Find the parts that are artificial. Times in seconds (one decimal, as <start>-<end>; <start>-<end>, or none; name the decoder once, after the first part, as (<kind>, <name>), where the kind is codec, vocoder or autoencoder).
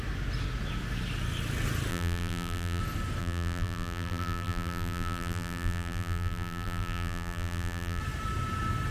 1.9-2.8 (vocoder, BigVGAN v2); 3.2-8.0